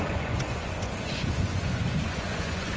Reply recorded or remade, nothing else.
remade